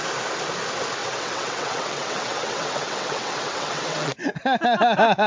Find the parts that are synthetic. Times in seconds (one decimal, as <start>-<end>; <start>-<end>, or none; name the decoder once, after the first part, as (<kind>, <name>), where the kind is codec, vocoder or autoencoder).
1.0-4.2 (vocoder, WaveNeXt)